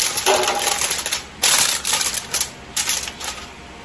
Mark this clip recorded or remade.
recorded